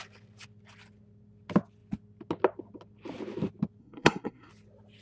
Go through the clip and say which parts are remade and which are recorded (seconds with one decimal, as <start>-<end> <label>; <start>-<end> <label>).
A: 0.0-3.8 recorded; 3.8-4.5 remade; 4.5-5.0 recorded